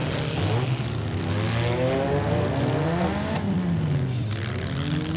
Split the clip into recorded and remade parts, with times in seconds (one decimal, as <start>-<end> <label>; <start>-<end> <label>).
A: 0.0-5.2 recorded

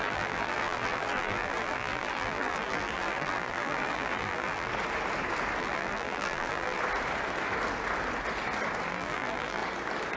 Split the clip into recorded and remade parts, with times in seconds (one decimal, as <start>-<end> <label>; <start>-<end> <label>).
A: 0.0-4.7 remade; 4.7-5.6 recorded; 5.6-6.8 remade; 6.8-8.9 recorded; 8.9-9.6 remade; 9.6-10.2 recorded

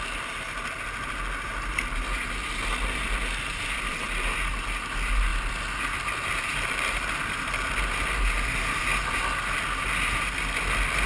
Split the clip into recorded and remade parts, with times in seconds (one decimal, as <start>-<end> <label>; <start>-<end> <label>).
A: 0.0-11.1 recorded

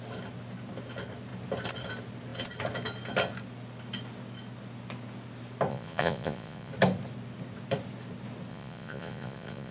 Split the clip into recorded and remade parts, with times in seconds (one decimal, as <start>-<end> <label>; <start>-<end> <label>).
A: 0.0-5.7 recorded; 5.7-6.7 remade; 6.7-8.5 recorded; 8.5-9.7 remade

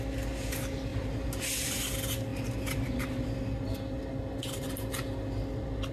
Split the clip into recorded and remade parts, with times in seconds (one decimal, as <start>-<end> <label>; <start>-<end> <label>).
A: 0.0-0.9 recorded; 0.9-1.8 remade; 1.8-5.9 recorded

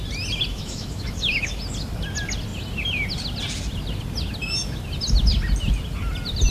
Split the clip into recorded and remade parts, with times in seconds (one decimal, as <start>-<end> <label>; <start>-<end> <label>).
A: 0.0-0.5 recorded; 0.5-1.6 remade; 1.6-6.5 recorded